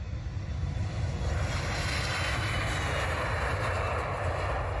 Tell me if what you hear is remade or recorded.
recorded